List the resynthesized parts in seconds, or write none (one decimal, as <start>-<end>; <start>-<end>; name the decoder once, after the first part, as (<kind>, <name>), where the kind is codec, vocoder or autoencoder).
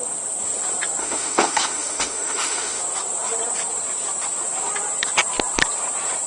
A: 1.0-2.8 (autoencoder, DAC-VAE)